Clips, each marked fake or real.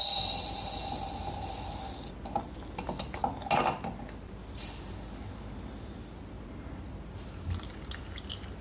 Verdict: real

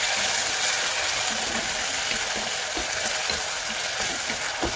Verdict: real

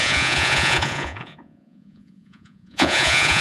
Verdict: fake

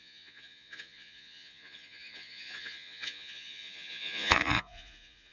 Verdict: fake